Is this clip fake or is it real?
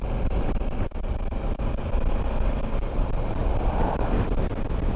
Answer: real